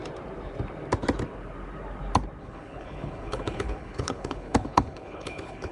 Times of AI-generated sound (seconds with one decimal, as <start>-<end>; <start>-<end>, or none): 2.4-5.7